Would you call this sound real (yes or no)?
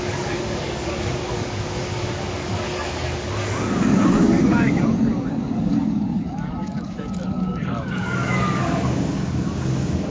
no